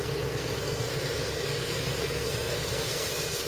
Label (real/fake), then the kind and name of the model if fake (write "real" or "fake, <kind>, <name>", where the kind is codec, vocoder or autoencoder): fake, codec, SNAC